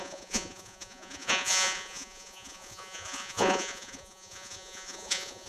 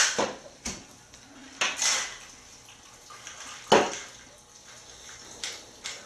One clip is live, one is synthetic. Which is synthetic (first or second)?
first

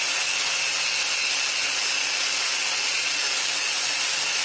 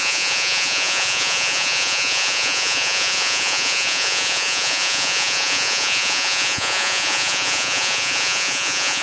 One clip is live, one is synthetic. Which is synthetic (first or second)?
second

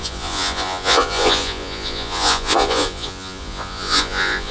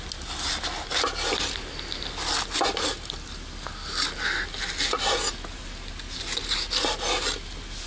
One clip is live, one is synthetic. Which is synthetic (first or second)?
first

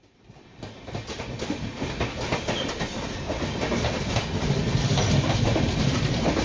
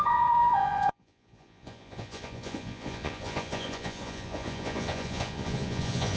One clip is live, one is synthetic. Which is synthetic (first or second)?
second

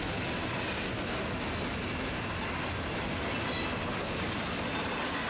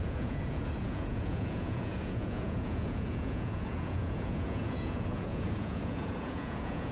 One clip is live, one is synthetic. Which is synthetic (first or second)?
second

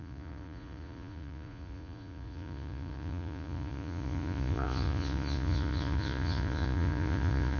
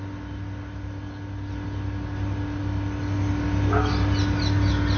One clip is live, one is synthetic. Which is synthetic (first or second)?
first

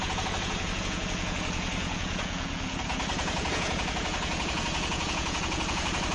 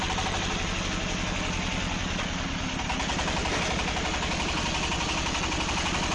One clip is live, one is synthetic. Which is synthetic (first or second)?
first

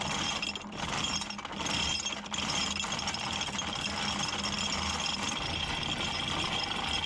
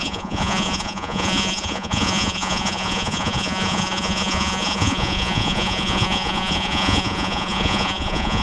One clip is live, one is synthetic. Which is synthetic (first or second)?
second